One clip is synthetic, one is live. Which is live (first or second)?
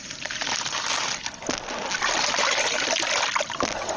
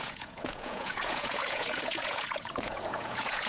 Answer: first